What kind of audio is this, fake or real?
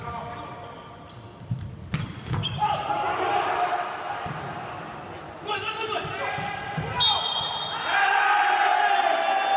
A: real